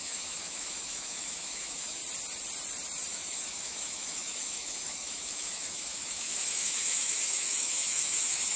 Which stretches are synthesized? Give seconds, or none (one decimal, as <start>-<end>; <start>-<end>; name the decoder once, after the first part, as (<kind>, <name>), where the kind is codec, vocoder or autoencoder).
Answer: 0.0-2.0 (autoencoder, DAC-VAE); 3.1-8.6